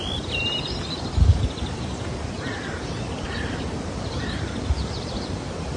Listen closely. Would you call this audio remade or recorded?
remade